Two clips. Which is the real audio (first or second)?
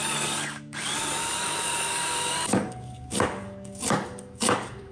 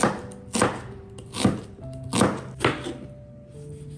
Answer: second